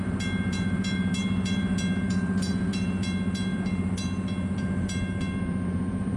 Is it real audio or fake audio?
fake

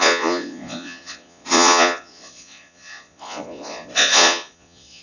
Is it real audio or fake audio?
fake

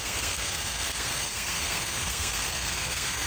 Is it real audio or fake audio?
fake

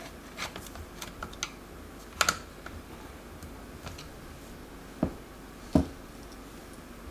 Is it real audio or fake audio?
real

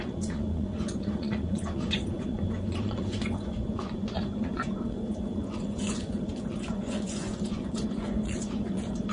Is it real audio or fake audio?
fake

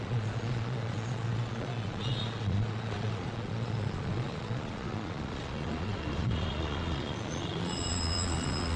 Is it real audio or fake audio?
fake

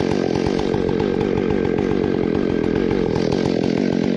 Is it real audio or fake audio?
fake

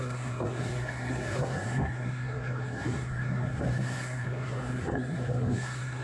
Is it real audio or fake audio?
fake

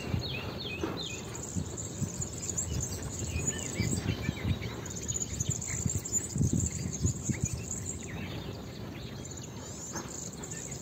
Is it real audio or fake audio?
real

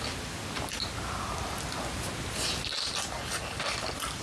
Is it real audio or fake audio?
real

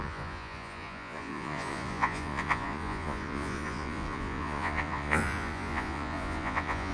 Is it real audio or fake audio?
fake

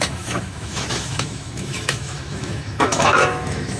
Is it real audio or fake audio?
fake